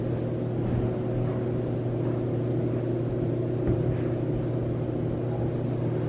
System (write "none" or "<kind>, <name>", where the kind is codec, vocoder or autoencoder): none